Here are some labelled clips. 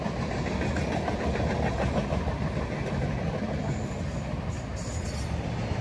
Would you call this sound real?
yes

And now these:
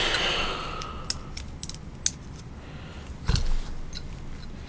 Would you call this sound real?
yes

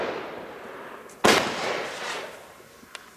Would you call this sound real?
yes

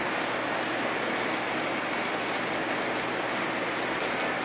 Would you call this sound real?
yes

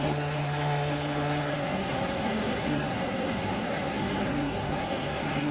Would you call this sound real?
no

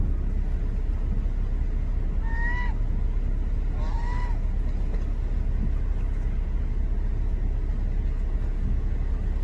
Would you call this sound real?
yes